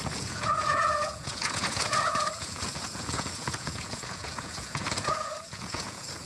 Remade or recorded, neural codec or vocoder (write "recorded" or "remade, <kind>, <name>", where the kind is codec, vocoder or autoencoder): remade, vocoder, Vocos